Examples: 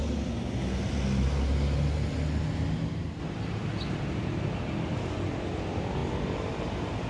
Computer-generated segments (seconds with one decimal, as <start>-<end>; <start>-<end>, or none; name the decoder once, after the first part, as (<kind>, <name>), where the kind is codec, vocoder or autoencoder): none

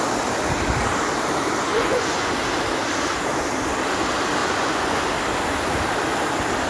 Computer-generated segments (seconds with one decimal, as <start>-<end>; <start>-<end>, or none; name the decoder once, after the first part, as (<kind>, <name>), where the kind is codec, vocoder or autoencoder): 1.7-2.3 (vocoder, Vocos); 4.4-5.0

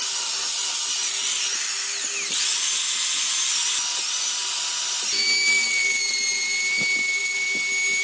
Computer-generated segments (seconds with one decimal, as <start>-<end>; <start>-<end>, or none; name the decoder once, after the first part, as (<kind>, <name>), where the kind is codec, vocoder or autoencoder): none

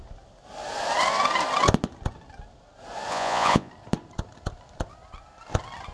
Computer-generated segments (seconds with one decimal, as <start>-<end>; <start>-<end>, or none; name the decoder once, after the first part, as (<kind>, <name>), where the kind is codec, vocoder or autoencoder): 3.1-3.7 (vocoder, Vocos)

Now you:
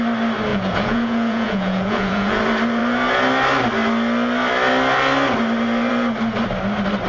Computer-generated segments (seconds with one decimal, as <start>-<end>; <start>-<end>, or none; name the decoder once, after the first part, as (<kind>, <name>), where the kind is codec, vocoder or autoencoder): 0.5-2.4 (vocoder, Vocos)

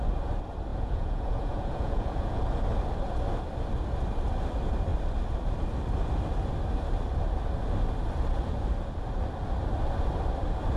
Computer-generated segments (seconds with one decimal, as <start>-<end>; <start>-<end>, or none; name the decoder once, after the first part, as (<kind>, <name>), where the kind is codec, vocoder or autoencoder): 0.7-2.4 (vocoder, Vocos)